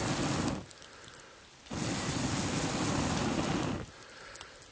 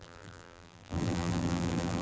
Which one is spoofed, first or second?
second